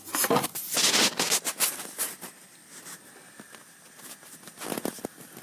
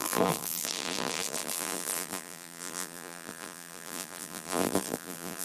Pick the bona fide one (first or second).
first